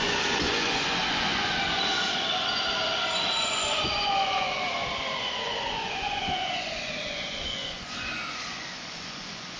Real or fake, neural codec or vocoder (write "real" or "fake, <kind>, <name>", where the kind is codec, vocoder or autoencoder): fake, vocoder, Vocos